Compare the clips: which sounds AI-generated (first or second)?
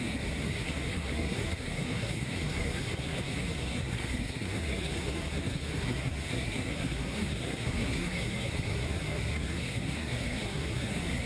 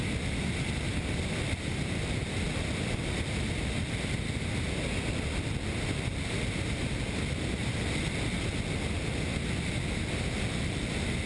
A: first